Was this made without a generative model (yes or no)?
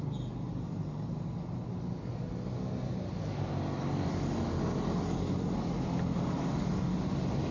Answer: yes